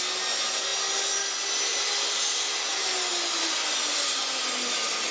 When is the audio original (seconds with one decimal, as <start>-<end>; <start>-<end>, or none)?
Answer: 0.0-5.1